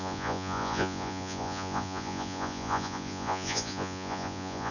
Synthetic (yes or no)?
yes